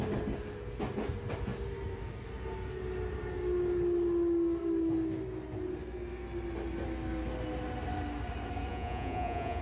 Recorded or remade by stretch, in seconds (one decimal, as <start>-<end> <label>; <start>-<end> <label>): 0.0-8.7 recorded; 8.7-9.6 remade